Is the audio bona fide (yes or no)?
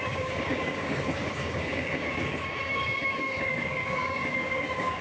no